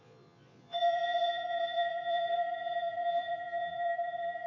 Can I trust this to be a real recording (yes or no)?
no